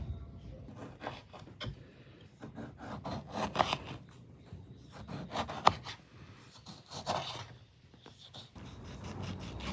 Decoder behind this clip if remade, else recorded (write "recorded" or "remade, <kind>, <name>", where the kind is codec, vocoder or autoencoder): recorded